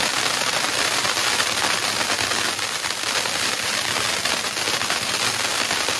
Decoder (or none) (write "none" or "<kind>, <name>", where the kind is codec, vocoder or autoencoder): vocoder, BigVGAN v2